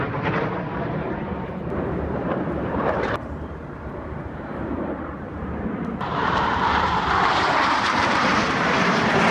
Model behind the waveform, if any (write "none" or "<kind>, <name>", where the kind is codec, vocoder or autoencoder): vocoder, BigVGAN v2